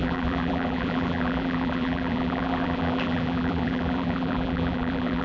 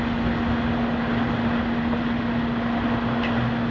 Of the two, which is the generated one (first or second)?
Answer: first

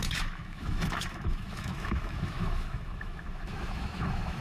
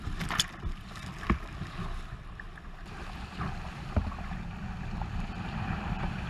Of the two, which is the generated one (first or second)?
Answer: first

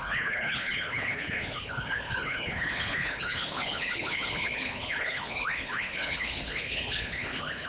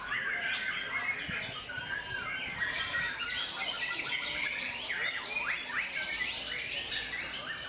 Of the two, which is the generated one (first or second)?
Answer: first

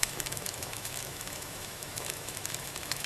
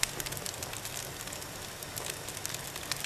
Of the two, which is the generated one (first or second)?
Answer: first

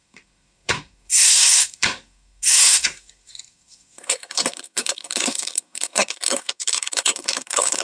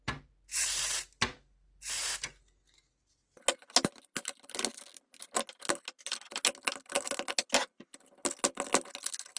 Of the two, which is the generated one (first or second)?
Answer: first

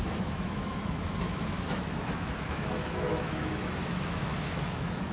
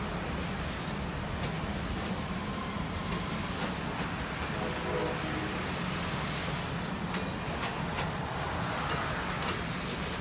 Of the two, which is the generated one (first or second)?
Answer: first